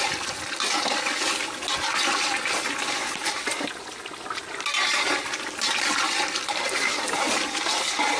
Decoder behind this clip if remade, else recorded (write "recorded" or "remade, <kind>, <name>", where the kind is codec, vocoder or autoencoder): recorded